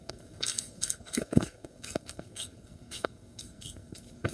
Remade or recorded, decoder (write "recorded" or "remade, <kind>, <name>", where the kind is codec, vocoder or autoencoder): remade, codec, SNAC